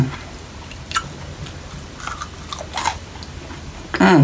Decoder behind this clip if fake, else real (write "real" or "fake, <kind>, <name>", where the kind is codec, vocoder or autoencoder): real